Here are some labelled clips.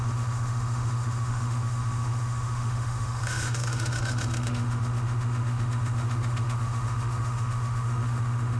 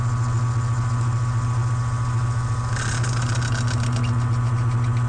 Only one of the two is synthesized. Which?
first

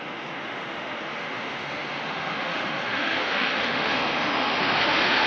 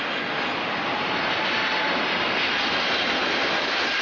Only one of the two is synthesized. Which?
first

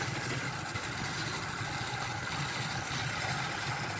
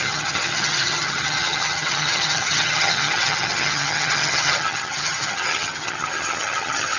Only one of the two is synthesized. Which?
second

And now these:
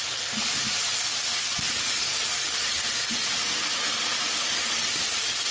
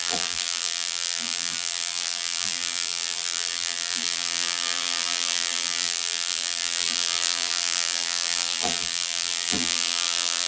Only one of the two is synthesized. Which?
second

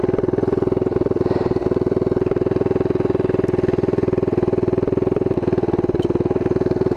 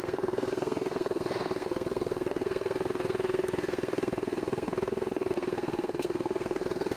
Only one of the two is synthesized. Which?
second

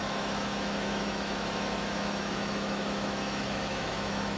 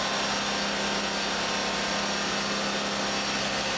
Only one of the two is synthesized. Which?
first